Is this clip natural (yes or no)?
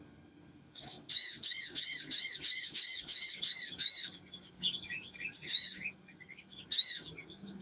no